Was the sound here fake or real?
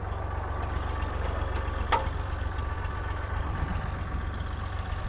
real